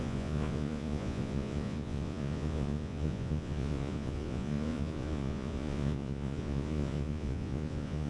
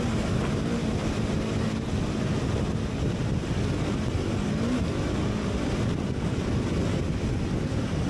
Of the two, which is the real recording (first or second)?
second